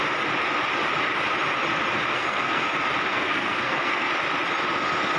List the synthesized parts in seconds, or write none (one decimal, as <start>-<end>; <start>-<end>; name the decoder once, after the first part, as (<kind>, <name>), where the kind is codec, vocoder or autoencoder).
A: 2.1-2.7 (codec, SNAC); 3.1-4.1